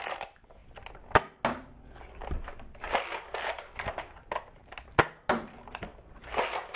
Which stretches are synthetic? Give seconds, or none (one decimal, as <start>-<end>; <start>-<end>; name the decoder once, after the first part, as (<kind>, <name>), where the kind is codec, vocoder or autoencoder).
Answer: none